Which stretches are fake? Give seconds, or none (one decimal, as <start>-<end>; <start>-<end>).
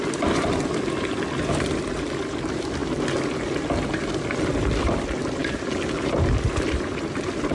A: 0.0-7.5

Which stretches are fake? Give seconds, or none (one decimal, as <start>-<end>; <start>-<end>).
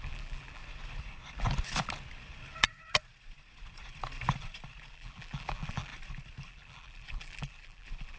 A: 0.0-0.6; 4.9-5.9; 6.5-8.2